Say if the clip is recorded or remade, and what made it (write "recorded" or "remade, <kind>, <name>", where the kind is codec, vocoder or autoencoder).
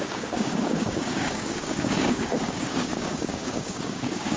remade, codec, DAC